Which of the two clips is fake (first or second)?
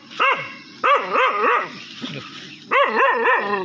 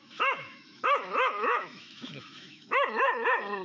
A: second